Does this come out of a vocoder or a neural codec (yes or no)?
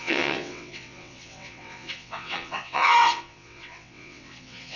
yes